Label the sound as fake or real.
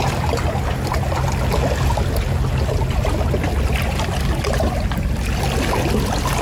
real